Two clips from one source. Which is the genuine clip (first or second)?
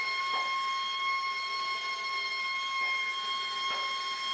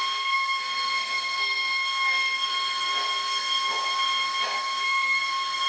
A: first